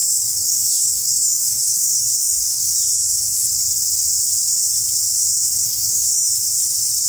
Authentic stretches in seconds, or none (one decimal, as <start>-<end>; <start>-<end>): 2.7-5.6; 6.3-7.1